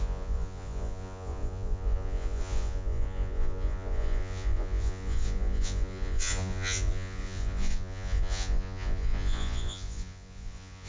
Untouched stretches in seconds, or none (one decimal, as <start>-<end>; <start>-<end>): none